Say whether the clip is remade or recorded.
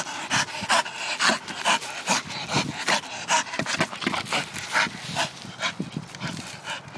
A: recorded